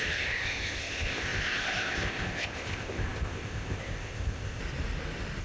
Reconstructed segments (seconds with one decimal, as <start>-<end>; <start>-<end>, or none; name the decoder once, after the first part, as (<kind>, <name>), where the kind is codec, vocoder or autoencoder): 0.0-4.6 (codec, ZipCodec)